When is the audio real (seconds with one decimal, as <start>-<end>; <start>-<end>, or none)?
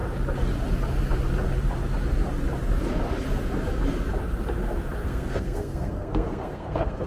0.0-5.0